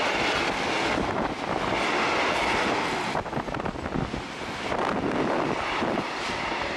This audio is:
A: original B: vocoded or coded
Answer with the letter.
A